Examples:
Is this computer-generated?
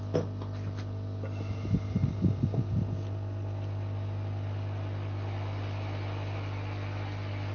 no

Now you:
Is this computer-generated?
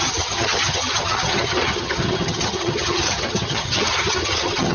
yes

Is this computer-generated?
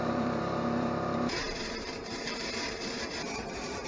yes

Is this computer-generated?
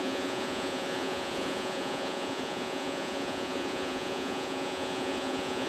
yes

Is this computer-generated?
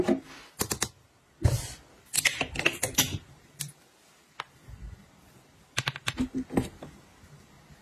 no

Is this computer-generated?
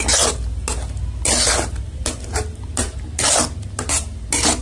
no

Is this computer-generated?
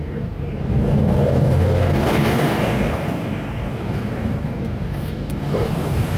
yes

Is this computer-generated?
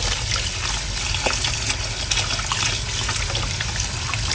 no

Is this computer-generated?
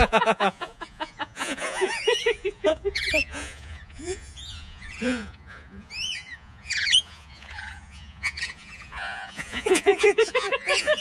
yes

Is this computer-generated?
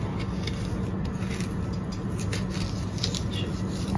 no